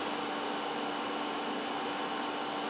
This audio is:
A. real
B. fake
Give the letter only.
A